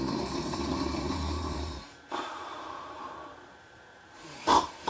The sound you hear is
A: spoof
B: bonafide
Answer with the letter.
A